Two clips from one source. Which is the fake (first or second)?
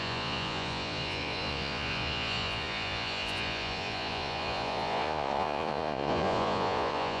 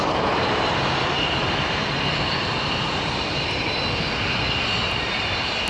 first